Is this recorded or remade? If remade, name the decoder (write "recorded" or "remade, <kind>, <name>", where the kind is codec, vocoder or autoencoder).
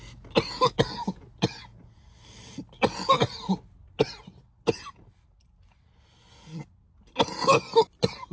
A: recorded